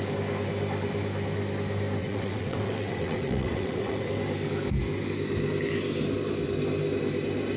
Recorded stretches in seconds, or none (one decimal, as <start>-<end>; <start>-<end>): 0.0-2.0; 4.1-7.6